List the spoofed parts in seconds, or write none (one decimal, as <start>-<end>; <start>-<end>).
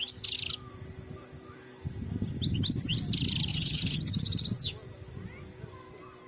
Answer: 3.5-4.1